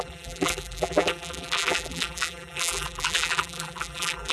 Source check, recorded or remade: remade